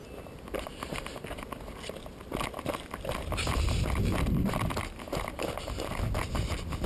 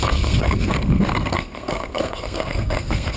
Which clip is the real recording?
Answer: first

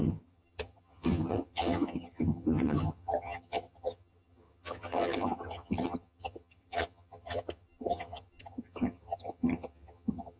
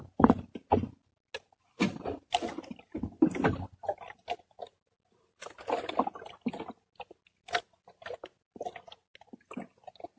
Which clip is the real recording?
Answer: second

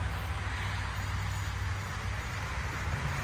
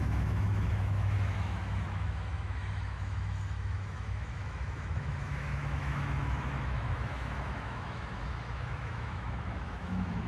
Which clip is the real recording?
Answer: first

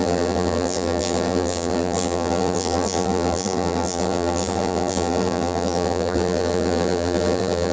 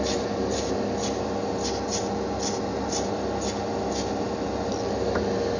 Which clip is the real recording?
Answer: second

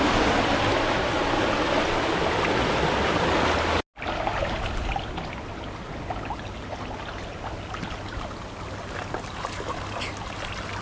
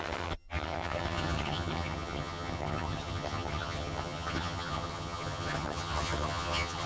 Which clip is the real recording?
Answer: first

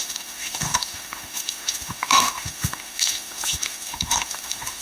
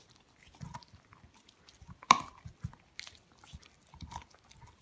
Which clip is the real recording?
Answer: second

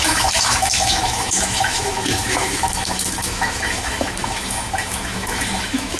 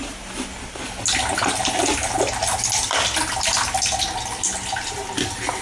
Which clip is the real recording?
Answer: second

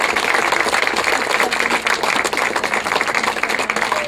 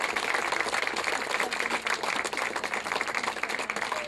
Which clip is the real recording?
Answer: first